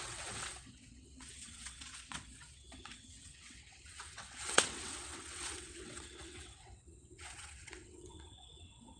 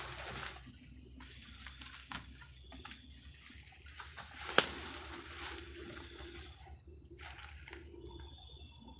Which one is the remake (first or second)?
first